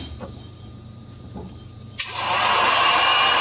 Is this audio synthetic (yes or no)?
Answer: yes